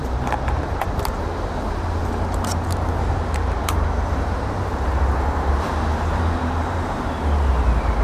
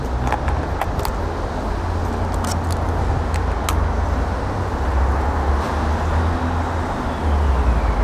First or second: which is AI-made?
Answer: first